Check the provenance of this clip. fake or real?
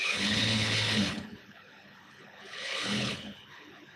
fake